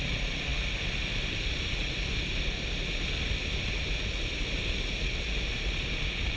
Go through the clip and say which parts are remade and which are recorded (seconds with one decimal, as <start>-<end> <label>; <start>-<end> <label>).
0.0-6.4 recorded